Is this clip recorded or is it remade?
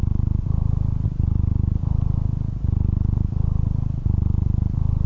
recorded